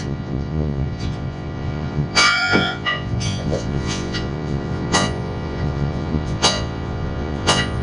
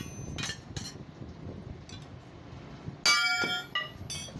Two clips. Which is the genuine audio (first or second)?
second